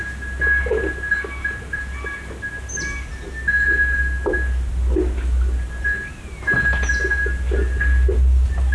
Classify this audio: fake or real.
real